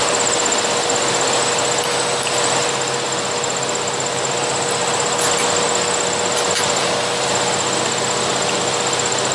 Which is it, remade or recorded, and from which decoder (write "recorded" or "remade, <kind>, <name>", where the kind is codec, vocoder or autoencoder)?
recorded